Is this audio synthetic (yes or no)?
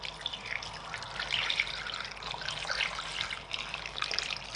no